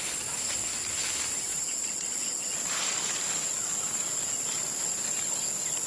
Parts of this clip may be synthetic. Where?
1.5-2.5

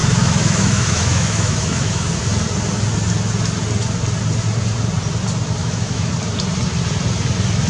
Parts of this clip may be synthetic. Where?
0.0-2.1; 5.6-6.1

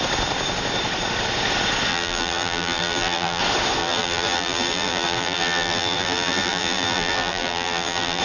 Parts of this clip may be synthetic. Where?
1.9-3.4; 3.8-8.2

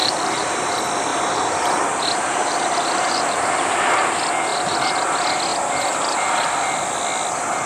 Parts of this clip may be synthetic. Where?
0.0-0.7; 1.1-4.1

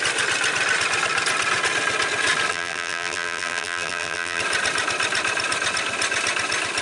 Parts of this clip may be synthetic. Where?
2.5-4.4

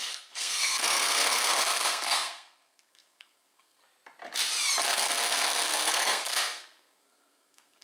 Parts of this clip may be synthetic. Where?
0.0-3.8; 4.9-7.8

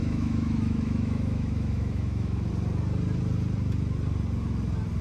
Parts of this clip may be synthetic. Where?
0.0-2.5

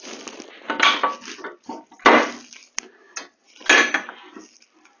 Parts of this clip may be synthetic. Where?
none